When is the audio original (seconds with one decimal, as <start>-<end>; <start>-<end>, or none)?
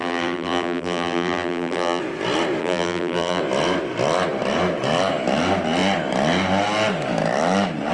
2.0-2.6; 3.4-7.9